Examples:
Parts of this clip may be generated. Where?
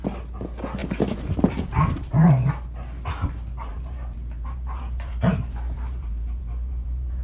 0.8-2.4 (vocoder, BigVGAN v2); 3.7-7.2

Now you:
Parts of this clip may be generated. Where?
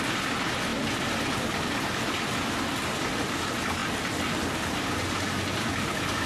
none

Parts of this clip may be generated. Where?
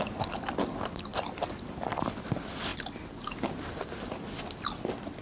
1.1-2.1 (vocoder, BigVGAN v2)